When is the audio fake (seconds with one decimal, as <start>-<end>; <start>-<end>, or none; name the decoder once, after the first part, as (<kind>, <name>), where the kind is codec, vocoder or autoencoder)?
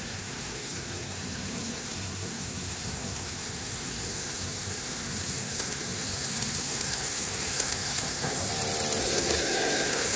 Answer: 0.0-8.5 (codec, SNAC); 9.0-10.2